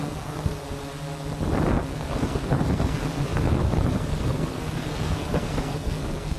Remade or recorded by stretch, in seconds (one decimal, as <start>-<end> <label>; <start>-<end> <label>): 0.0-0.6 remade; 0.6-1.7 recorded; 1.7-6.4 remade